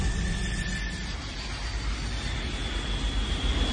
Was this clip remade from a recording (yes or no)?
no